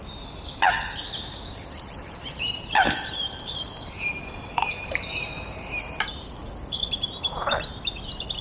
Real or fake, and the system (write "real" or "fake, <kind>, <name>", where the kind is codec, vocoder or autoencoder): fake, vocoder, BigVGAN v2